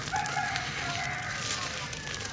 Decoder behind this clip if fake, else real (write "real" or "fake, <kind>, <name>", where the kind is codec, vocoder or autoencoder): real